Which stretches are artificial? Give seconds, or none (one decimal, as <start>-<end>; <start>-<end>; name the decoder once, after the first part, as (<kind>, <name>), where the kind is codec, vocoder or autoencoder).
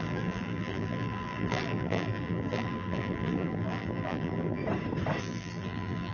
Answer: 0.0-4.6 (vocoder, BigVGAN v2); 5.2-6.1